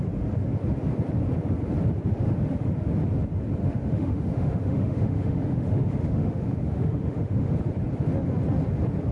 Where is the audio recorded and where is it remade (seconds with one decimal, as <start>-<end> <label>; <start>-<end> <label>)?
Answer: 0.0-2.1 recorded; 2.1-2.7 remade; 2.7-3.6 recorded; 3.6-7.6 remade; 7.6-9.1 recorded